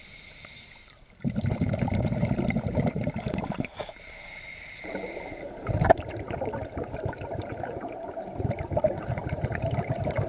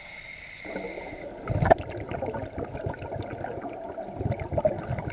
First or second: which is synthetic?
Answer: first